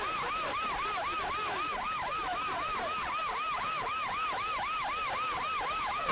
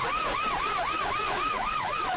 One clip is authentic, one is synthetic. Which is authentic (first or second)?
first